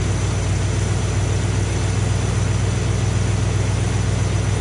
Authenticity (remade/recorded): recorded